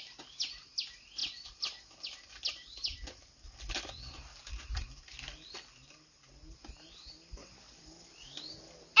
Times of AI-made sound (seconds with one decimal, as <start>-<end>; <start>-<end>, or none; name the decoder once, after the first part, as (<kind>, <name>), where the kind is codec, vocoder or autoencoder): none